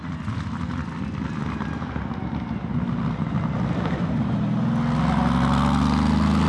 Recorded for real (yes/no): yes